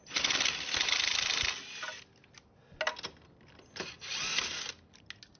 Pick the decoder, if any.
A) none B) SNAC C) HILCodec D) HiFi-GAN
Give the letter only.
A